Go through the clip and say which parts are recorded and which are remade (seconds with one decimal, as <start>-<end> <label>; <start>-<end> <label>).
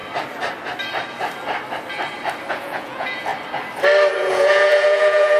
0.0-2.5 recorded; 2.5-3.3 remade; 3.3-4.2 recorded; 4.2-5.4 remade